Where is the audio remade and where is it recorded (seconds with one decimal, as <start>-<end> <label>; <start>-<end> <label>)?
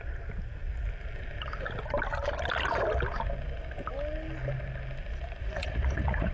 0.0-5.4 recorded; 5.4-6.3 remade